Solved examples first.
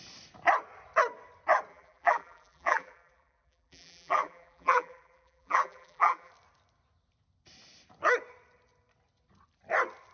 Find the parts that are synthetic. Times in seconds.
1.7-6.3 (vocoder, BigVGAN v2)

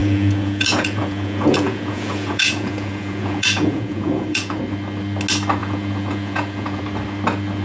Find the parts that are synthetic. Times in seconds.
0.0-4.6 (vocoder, Vocos); 5.6-6.8